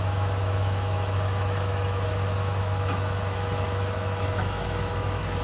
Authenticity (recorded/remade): remade